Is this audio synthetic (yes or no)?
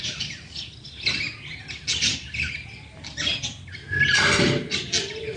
no